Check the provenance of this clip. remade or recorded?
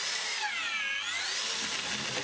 recorded